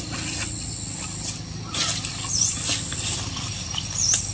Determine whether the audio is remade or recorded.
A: recorded